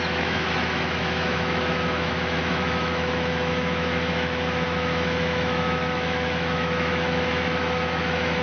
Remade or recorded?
remade